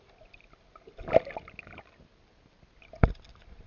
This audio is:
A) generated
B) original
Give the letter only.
B